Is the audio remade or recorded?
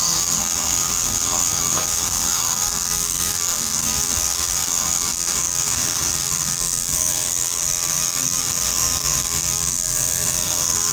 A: remade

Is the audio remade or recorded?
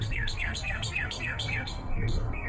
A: remade